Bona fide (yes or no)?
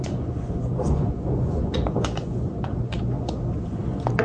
no